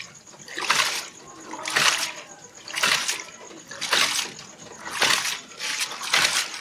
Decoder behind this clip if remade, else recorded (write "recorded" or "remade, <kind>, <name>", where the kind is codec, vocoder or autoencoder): recorded